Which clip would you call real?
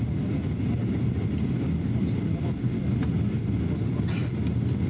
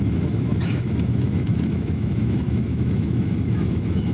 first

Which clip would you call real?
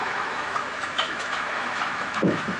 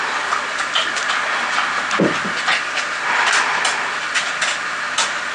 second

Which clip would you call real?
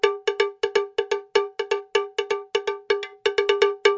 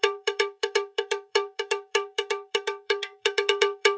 first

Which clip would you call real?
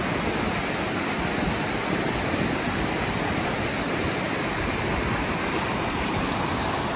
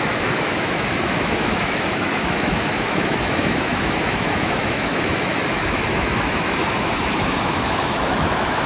first